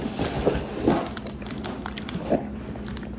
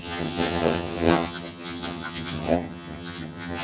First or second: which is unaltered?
first